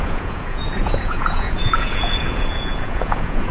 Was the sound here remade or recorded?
remade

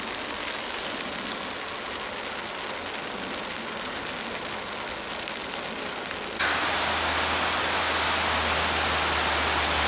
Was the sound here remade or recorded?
recorded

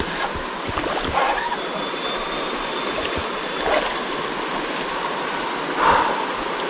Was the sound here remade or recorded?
recorded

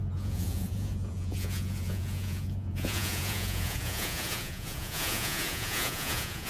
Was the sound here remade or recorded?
remade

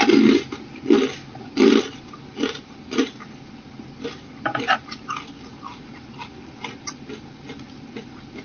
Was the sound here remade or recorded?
recorded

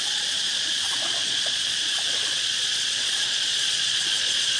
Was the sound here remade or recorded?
remade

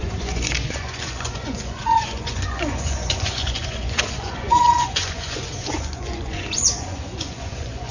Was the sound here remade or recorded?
remade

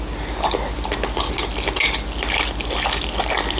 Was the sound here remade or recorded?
recorded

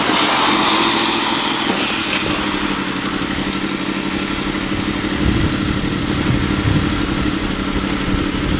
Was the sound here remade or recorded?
recorded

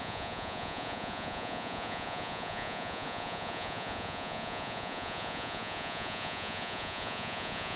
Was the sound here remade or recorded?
remade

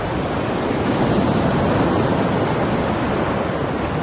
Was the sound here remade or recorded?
recorded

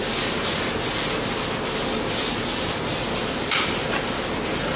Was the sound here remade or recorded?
recorded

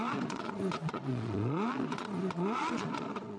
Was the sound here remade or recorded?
remade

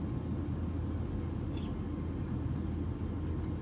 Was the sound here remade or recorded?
recorded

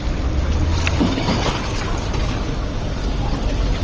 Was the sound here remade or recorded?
recorded